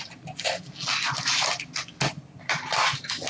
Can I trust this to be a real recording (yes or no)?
yes